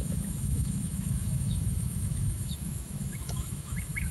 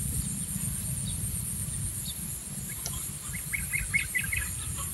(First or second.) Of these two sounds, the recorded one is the second